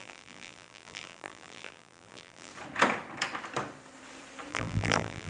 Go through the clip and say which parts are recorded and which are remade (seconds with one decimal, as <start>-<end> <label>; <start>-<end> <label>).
0.0-2.5 remade; 2.5-4.5 recorded; 4.5-5.3 remade